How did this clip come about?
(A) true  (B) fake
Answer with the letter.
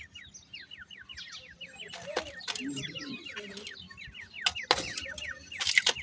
A